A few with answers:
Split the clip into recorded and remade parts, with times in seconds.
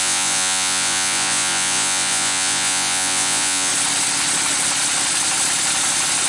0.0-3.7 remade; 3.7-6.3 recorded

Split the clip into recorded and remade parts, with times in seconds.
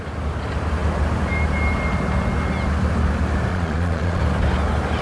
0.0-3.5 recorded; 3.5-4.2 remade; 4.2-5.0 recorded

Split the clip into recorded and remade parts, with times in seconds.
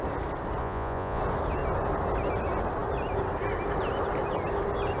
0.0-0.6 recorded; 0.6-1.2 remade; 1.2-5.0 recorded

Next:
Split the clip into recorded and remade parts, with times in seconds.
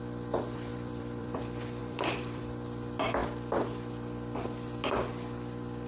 0.0-0.7 recorded; 0.7-1.4 remade; 1.4-1.8 recorded; 1.8-2.4 remade; 2.4-5.9 recorded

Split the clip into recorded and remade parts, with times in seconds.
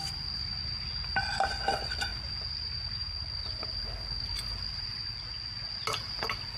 0.0-6.6 recorded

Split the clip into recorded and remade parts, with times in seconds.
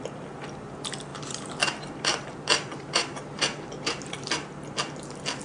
0.0-1.1 recorded; 1.1-4.3 remade; 4.3-5.4 recorded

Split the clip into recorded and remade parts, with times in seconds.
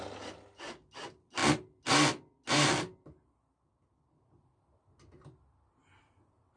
0.0-6.6 recorded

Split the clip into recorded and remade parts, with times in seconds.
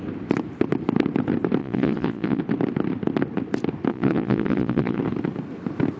0.0-1.6 recorded; 1.6-2.4 remade; 2.4-3.9 recorded; 3.9-5.0 remade; 5.0-6.0 recorded